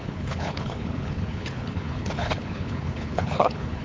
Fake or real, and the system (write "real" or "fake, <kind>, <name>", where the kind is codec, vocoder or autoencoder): fake, codec, HILCodec